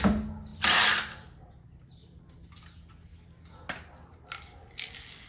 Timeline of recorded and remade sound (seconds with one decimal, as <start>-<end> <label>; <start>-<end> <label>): 0.0-5.3 recorded